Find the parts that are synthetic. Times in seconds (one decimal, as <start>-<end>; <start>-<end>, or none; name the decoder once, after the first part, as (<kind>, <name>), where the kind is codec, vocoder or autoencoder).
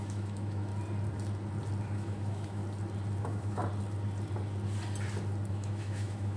0.0-0.7 (autoencoder, DAC-VAE); 1.8-2.6; 3.2-3.6; 5.5-6.4